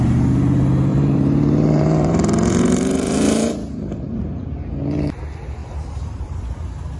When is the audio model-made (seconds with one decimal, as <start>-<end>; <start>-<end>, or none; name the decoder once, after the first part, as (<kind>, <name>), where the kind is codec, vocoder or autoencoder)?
0.9-4.2 (vocoder, BigVGAN v2); 5.6-6.4